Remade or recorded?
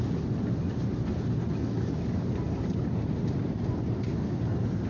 recorded